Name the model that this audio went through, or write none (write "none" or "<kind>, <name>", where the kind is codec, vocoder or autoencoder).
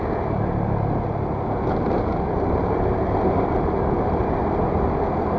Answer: none